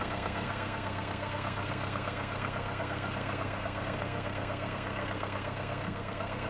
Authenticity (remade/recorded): remade